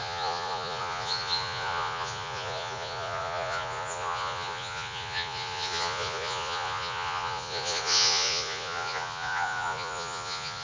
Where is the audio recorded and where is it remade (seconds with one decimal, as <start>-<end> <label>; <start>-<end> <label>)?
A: 0.0-10.6 remade